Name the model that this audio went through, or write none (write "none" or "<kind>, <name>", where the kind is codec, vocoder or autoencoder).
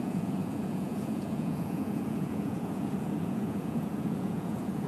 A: vocoder, Vocos